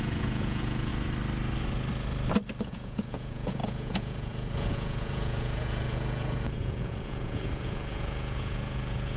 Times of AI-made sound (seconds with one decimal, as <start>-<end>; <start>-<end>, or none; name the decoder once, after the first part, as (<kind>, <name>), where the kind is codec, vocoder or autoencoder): 0.0-0.9 (vocoder, Vocos); 2.6-9.2